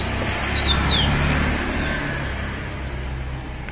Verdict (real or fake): real